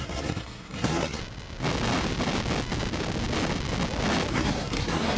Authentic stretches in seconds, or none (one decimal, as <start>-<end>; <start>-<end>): 1.2-4.3

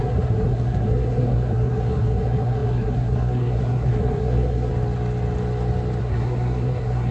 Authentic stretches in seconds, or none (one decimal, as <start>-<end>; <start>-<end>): 4.7-6.0

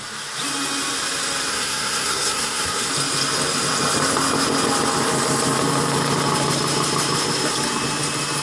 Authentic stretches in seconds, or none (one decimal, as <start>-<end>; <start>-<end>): 0.0-1.5; 2.9-8.4

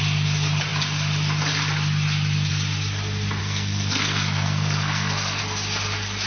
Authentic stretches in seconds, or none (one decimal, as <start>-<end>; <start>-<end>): 0.0-3.4; 5.4-6.3